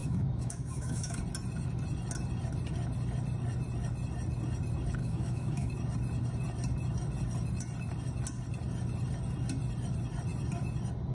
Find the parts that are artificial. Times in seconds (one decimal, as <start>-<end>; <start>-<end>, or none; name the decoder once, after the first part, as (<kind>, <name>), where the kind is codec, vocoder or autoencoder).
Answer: 0.0-1.2 (autoencoder, DAC-VAE); 5.0-5.7